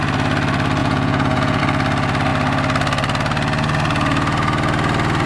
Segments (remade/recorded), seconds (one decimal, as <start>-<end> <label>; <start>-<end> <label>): 0.0-0.8 recorded; 0.8-1.6 remade; 1.6-5.3 recorded